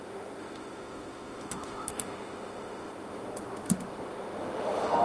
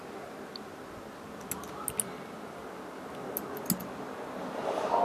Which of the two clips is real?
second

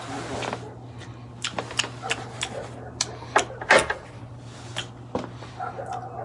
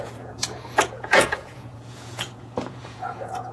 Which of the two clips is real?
first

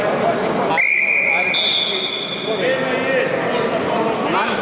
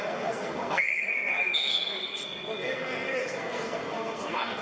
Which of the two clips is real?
first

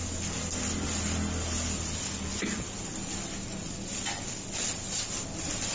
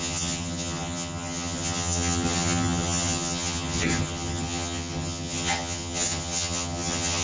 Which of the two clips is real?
first